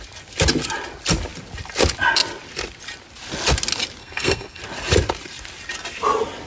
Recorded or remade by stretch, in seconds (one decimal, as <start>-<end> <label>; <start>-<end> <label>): 0.0-4.0 recorded; 4.0-4.6 remade; 4.6-6.5 recorded